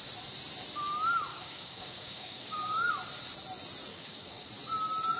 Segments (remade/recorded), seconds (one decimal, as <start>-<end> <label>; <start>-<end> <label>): 0.0-1.3 recorded; 1.3-2.9 remade; 2.9-3.9 recorded; 3.9-4.5 remade; 4.5-5.2 recorded